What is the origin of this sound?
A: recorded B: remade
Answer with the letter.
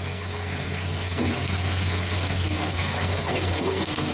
B